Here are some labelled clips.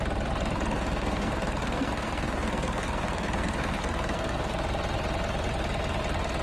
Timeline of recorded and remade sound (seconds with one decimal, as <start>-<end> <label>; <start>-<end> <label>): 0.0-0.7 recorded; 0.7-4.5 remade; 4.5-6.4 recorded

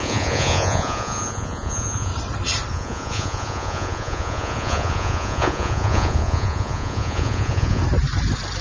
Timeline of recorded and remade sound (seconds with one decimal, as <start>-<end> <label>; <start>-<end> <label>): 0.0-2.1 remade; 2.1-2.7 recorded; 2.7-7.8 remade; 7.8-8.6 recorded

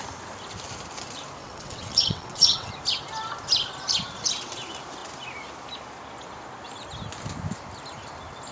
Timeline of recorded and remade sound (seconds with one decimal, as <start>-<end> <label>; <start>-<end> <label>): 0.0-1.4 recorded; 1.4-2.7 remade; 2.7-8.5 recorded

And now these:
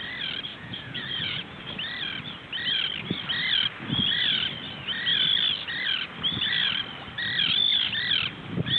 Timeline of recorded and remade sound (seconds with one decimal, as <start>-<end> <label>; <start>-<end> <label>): 0.0-0.5 recorded; 0.5-1.6 remade; 1.6-8.8 recorded

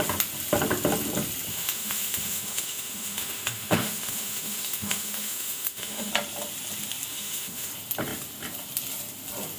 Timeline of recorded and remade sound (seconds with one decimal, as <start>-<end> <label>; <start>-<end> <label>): 0.0-1.5 recorded; 1.5-6.1 remade; 6.1-7.1 recorded; 7.1-7.7 remade; 7.7-9.6 recorded